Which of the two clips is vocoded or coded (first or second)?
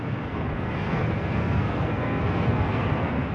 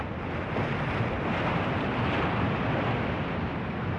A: first